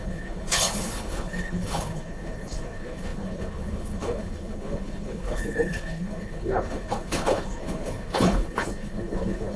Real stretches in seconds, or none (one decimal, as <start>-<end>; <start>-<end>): none